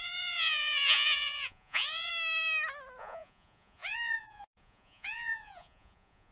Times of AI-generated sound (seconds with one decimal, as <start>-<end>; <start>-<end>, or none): 0.0-2.1; 3.0-6.3